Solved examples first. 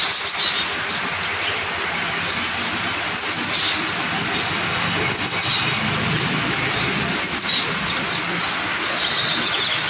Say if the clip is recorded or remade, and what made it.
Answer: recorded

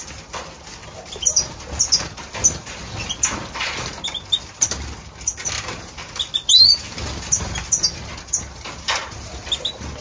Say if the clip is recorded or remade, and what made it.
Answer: recorded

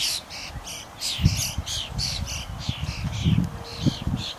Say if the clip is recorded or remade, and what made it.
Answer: recorded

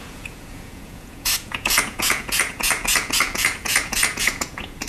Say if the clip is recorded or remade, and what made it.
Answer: remade, vocoder, Vocos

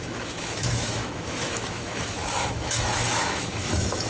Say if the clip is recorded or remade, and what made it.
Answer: remade, autoencoder, DAC-VAE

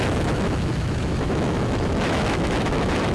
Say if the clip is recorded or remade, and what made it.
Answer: remade, autoencoder, DAC-VAE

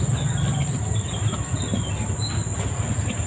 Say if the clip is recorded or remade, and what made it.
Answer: recorded